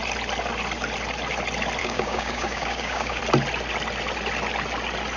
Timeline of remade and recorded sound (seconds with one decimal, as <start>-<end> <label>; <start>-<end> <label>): 0.0-1.8 recorded; 1.8-3.2 remade; 3.2-5.2 recorded